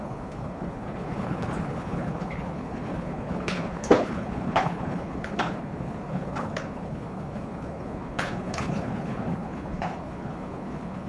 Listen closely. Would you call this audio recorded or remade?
remade